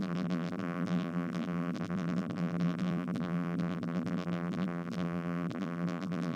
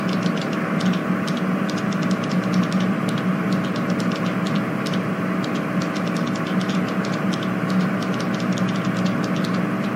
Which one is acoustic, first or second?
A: second